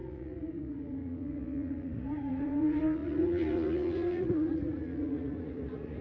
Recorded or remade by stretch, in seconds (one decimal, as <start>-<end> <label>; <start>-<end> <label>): 0.0-6.0 remade